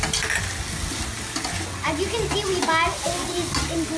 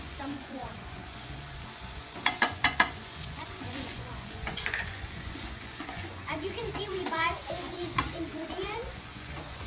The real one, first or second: first